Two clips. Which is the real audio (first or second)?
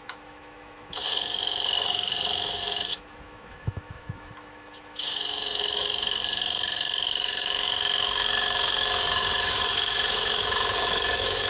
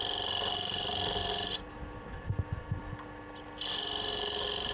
second